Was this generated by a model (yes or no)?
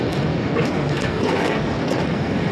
yes